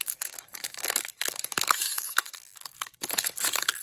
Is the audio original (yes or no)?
no